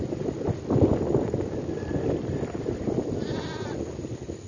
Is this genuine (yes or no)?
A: yes